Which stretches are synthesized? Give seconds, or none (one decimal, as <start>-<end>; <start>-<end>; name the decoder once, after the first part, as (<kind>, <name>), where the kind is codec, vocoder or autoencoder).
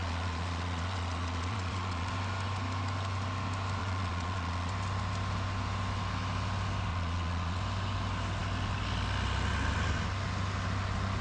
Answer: 0.0-2.1 (vocoder, Vocos); 3.8-4.7; 6.9-7.6